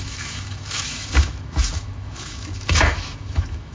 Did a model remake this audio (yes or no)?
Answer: yes